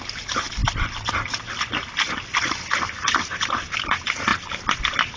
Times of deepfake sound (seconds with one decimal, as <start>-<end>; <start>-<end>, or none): none